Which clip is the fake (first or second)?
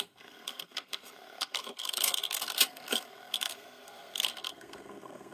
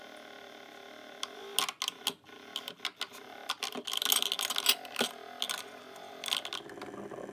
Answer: first